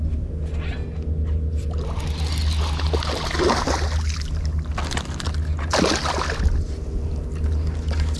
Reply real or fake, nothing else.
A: real